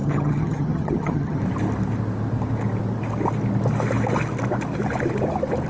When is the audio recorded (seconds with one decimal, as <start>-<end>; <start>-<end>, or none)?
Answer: 1.4-5.7